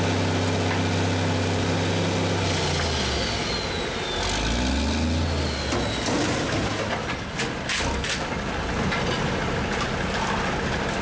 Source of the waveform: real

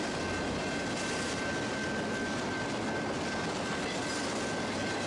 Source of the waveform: real